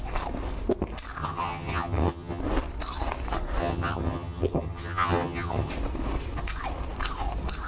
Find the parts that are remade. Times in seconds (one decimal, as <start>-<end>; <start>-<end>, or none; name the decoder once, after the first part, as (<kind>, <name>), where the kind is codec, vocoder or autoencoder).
1.2-2.4 (vocoder, HiFi-GAN); 3.6-5.7